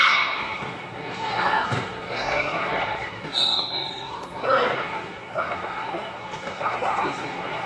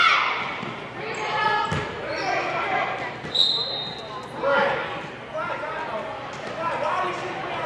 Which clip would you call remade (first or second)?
first